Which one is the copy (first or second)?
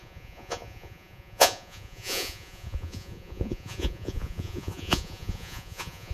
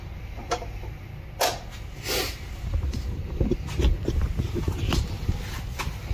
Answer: first